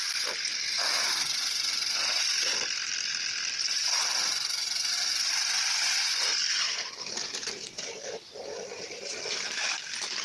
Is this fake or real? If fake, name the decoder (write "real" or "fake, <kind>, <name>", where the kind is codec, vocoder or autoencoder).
fake, vocoder, BigVGAN v2